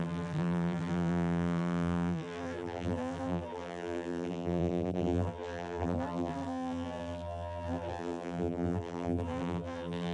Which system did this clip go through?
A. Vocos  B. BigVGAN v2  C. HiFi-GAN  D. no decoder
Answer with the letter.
B